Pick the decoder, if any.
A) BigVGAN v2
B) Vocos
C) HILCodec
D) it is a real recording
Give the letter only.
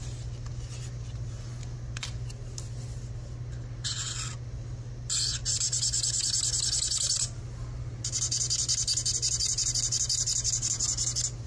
D